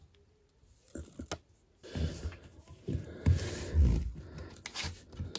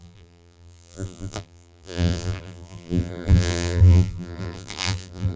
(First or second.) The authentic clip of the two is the first